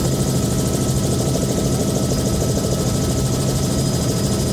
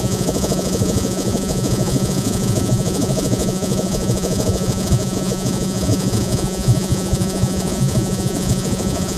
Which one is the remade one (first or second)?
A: second